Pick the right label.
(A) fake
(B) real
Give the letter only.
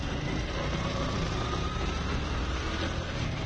B